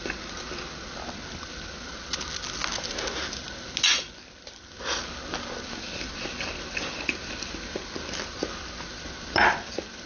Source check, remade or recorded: recorded